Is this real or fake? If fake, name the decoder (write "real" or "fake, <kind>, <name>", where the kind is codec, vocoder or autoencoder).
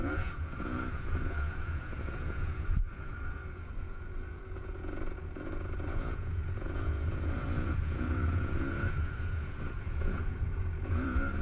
fake, vocoder, Vocos